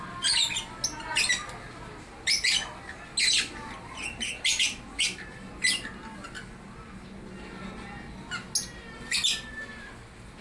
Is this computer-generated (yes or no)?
no